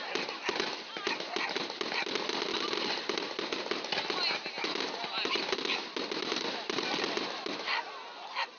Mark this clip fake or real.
real